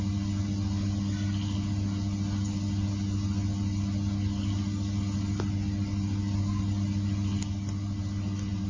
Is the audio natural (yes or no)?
yes